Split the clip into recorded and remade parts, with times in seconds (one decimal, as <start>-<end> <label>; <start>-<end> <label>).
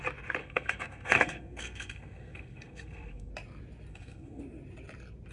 0.0-0.4 recorded; 0.4-3.3 remade; 3.3-3.9 recorded; 3.9-4.4 remade; 4.4-5.3 recorded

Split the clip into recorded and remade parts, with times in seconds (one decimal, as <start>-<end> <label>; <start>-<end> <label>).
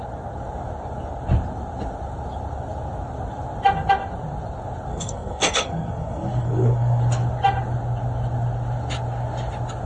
0.0-4.9 recorded; 4.9-7.0 remade; 7.0-9.9 recorded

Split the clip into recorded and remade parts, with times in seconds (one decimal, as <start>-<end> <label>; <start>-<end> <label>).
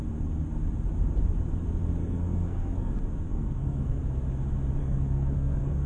0.0-2.0 recorded; 2.0-2.9 remade; 2.9-3.3 recorded; 3.3-4.0 remade; 4.0-4.8 recorded; 4.8-5.9 remade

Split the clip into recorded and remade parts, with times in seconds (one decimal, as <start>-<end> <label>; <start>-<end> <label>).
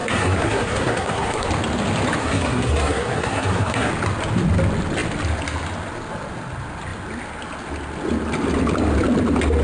0.0-1.5 remade; 1.5-2.2 recorded; 2.2-3.9 remade; 3.9-9.6 recorded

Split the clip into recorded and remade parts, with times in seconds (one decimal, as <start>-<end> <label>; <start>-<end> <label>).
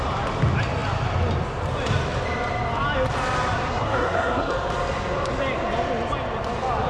0.0-3.7 recorded; 3.7-4.5 remade; 4.5-6.9 recorded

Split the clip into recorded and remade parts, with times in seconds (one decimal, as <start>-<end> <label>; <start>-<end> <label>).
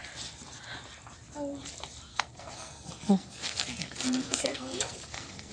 0.0-2.1 recorded; 2.1-5.5 remade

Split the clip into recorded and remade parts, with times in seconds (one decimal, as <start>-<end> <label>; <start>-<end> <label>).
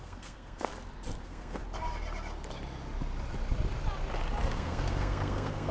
0.0-0.7 remade; 0.7-1.2 recorded; 1.2-1.6 remade; 1.6-4.5 recorded; 4.5-5.7 remade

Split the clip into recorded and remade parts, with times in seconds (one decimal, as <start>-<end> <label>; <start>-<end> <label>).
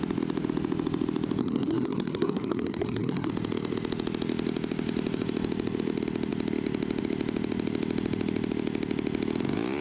0.0-1.4 recorded; 1.4-3.3 remade; 3.3-9.8 recorded